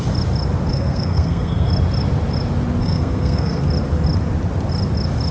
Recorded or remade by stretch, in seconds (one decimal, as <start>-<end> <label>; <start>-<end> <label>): 0.0-0.7 recorded; 0.7-1.7 remade; 1.7-2.8 recorded; 2.8-3.6 remade; 3.6-5.3 recorded